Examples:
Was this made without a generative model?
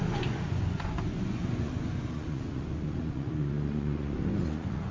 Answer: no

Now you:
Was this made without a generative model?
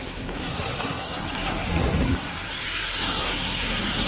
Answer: no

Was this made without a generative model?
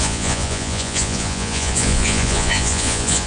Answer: no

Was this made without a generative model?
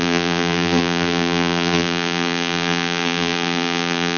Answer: no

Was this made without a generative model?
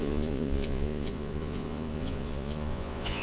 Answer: no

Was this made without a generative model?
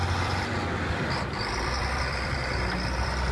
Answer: no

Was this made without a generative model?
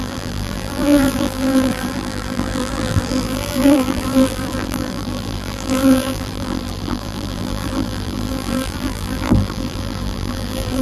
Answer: no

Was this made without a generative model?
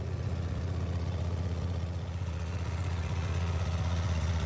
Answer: no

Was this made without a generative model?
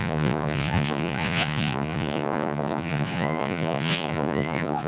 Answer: no